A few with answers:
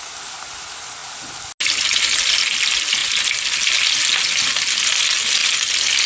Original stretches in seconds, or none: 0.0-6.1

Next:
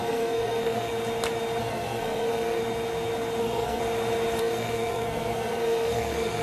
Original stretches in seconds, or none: 0.9-1.6; 2.6-3.4; 3.8-4.4

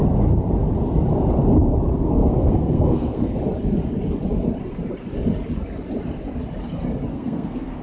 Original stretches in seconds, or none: 0.0-1.9; 3.4-7.1